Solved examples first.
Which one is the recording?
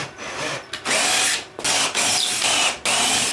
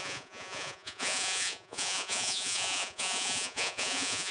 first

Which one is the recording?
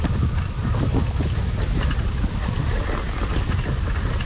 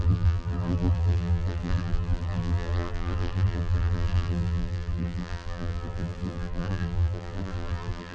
first